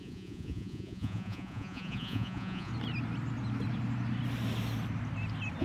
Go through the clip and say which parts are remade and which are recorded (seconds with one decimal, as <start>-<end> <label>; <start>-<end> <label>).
0.0-2.7 remade; 2.7-5.6 recorded